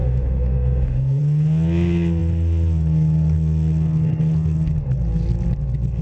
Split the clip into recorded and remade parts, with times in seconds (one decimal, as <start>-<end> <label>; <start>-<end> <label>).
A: 0.0-1.2 remade; 1.2-6.0 recorded

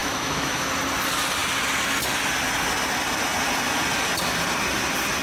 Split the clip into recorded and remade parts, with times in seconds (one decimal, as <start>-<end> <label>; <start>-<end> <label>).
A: 0.0-0.7 remade; 0.7-5.2 recorded

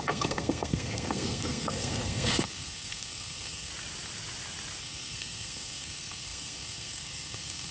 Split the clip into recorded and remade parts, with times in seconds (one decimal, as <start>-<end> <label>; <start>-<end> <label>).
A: 0.0-3.7 remade; 3.7-4.8 recorded; 4.8-7.7 remade

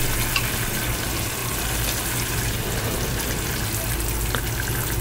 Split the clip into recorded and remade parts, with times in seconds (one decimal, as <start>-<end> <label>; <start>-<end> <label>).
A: 0.0-5.0 recorded